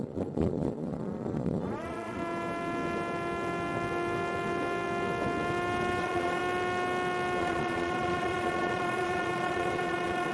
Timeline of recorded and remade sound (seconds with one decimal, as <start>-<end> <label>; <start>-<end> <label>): 0.0-2.2 remade; 2.2-6.0 recorded; 6.0-6.4 remade; 6.4-7.4 recorded; 7.4-10.3 remade